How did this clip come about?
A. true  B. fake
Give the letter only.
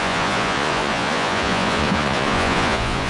B